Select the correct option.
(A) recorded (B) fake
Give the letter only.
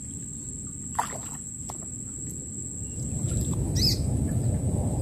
A